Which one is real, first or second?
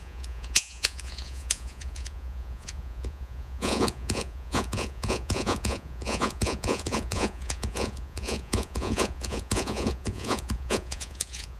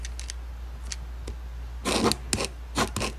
second